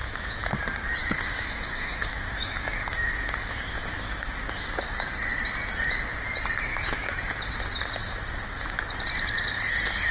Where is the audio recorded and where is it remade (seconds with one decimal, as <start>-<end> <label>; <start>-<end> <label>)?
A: 0.0-0.6 remade; 0.6-1.0 recorded; 1.0-4.7 remade; 4.7-6.7 recorded; 6.7-7.3 remade; 7.3-8.0 recorded; 8.0-8.9 remade; 8.9-10.1 recorded